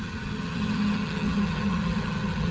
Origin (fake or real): fake